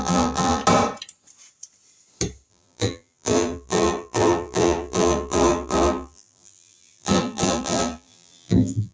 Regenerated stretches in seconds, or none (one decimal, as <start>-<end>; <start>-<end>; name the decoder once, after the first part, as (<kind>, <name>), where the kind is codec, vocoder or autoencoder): 0.0-0.6 (vocoder, BigVGAN v2); 2.5-8.9